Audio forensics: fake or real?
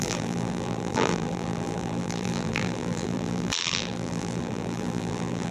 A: fake